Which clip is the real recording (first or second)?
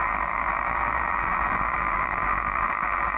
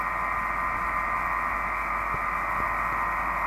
second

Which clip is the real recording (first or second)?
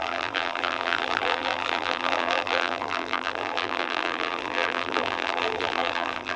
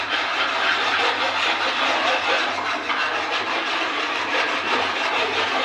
second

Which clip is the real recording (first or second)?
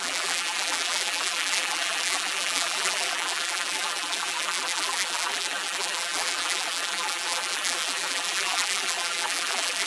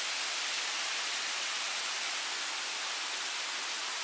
second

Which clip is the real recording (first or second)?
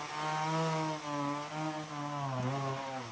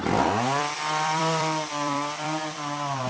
first